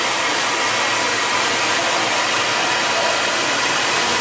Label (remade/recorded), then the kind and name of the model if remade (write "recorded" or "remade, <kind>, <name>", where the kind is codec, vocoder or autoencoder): recorded